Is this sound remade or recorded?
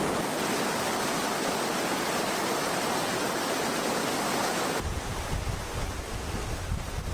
recorded